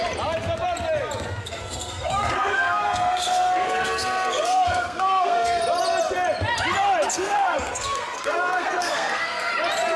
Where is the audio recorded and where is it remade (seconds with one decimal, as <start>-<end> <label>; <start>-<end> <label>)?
0.0-1.4 recorded; 1.4-5.6 remade; 5.6-7.1 recorded; 7.1-9.5 remade; 9.5-10.0 recorded